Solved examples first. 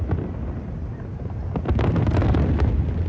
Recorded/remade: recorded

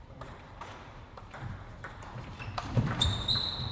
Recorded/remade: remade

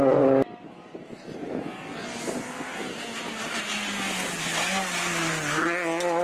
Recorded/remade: recorded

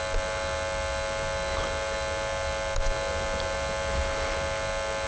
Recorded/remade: recorded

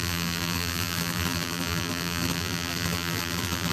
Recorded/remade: remade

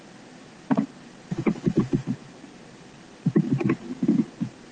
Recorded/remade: remade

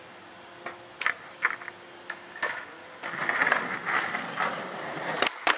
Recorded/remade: recorded